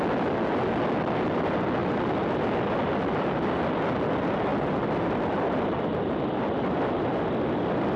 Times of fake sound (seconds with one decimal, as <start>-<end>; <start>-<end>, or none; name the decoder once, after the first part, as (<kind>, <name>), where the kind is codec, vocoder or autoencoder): none